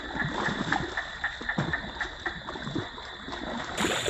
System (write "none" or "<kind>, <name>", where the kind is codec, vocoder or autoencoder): vocoder, BigVGAN v2